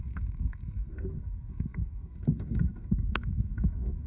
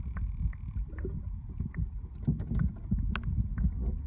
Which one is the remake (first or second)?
first